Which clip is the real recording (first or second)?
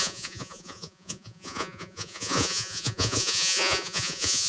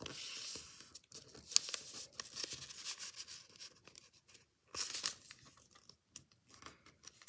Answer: second